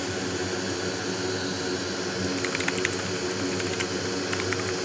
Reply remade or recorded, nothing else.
recorded